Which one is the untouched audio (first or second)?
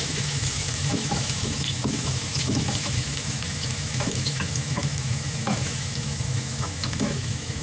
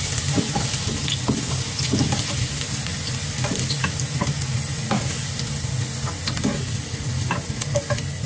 second